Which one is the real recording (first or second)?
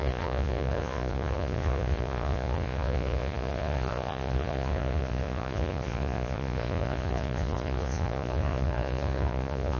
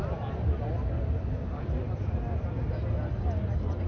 second